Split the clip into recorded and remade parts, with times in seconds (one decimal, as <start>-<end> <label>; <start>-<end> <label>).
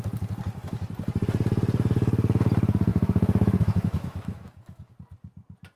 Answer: 0.0-2.9 recorded; 2.9-4.9 remade; 4.9-5.8 recorded